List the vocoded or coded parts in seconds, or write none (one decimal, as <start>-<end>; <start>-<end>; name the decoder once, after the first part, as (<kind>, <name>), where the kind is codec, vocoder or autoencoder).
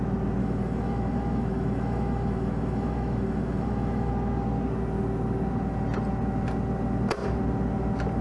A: 0.4-4.1 (autoencoder, DAC-VAE)